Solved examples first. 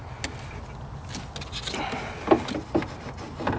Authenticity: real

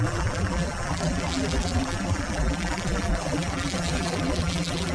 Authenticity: fake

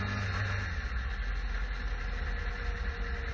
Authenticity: real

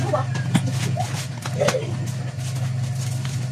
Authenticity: real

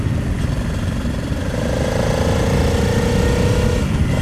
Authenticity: real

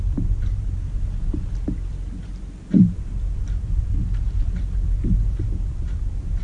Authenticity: fake